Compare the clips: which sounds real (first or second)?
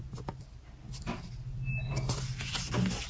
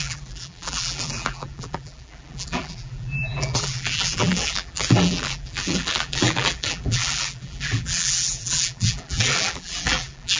first